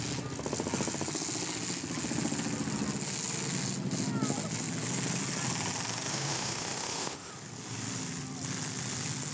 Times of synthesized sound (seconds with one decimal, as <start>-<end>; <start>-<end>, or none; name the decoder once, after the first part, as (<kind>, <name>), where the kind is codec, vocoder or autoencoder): 6.1-7.3 (autoencoder, DAC-VAE)